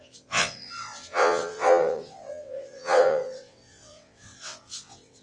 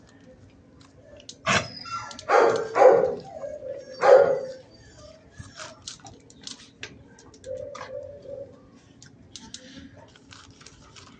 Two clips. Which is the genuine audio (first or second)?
second